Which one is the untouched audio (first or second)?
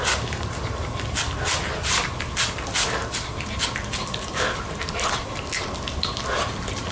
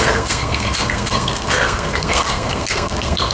first